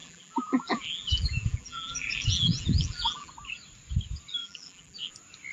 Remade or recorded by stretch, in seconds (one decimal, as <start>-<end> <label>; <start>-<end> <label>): 0.0-3.3 remade; 3.3-4.4 recorded; 4.4-5.1 remade; 5.1-5.5 recorded

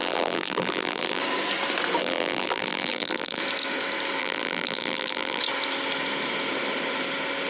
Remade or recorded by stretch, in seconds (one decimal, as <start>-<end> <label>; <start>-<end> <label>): 0.0-1.2 remade; 1.2-2.0 recorded; 2.0-3.4 remade; 3.4-4.2 recorded; 4.2-5.4 remade; 5.4-7.5 recorded

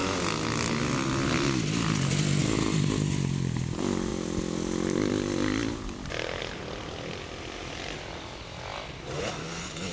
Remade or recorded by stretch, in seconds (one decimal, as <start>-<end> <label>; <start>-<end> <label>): 0.0-2.4 recorded; 2.4-8.7 remade; 8.7-9.2 recorded; 9.2-9.9 remade

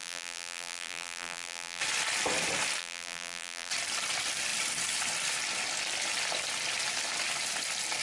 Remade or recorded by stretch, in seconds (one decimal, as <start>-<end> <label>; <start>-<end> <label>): 0.0-1.8 remade; 1.8-2.8 recorded; 2.8-3.7 remade; 3.7-8.0 recorded